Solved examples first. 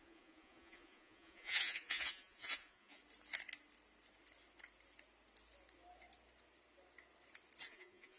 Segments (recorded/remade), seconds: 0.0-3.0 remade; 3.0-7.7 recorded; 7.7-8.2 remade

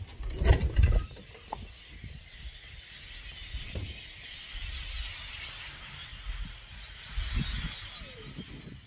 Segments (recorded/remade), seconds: 0.0-6.1 recorded; 6.1-7.2 remade; 7.2-8.9 recorded

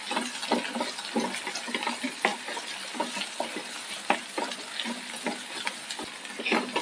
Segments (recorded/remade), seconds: 0.0-6.8 recorded